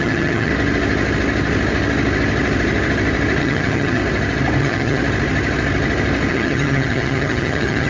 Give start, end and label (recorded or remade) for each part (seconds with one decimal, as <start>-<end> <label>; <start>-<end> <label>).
0.0-0.5 remade; 0.5-3.4 recorded; 3.4-4.0 remade; 4.0-4.6 recorded; 4.6-5.0 remade; 5.0-6.3 recorded; 6.3-7.9 remade